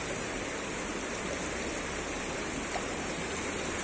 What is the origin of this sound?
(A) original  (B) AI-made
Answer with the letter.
A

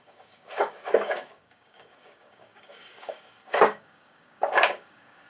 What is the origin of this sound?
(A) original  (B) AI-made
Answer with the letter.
B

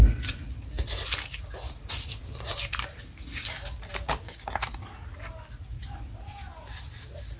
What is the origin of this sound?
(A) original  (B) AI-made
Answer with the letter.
A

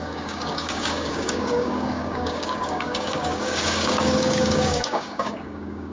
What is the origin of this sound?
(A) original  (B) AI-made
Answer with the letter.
B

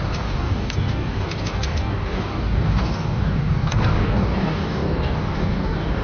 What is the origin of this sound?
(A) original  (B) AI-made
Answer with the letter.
B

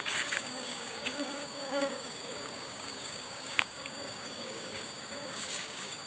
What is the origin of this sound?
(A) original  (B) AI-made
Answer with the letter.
B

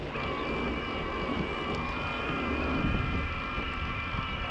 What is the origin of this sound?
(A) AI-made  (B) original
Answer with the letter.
B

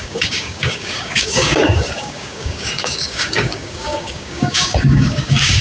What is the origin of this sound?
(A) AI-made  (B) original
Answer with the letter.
A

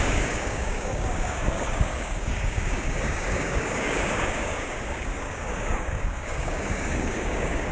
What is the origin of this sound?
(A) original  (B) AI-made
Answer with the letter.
B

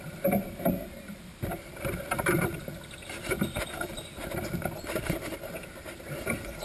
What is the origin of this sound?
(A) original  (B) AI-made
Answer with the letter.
A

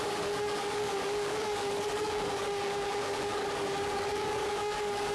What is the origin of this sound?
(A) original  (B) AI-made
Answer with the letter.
B